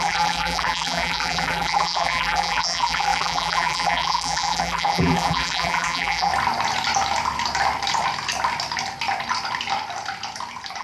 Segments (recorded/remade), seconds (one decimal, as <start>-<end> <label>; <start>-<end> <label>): 0.0-6.3 remade; 6.3-10.8 recorded